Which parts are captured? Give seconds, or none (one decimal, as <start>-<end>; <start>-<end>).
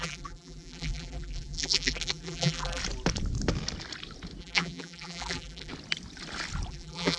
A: 2.8-4.4; 5.7-6.7